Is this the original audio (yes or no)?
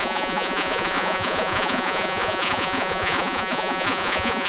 no